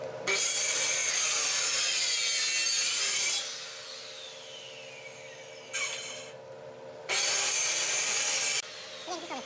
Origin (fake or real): real